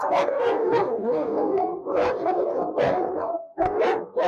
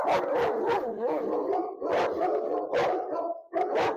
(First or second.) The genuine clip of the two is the second